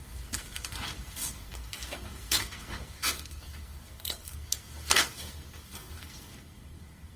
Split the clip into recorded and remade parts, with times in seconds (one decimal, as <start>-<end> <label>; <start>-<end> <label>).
0.0-7.2 remade